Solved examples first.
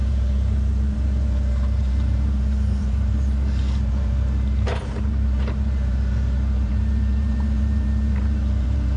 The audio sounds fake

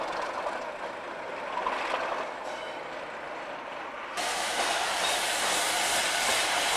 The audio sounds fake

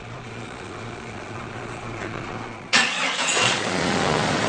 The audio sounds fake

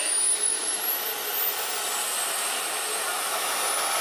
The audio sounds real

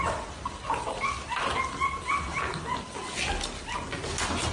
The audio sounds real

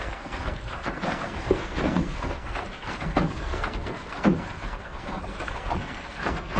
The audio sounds fake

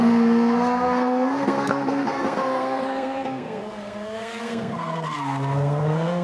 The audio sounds fake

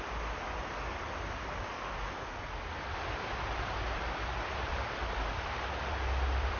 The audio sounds real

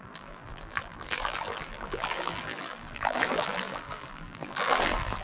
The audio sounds fake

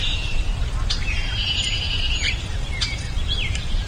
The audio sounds fake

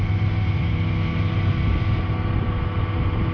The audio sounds real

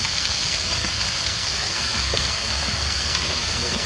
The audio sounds fake